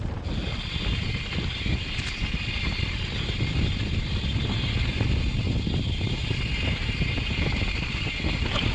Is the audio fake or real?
real